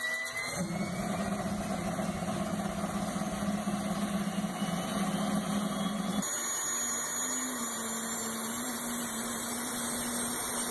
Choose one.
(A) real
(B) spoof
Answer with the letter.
A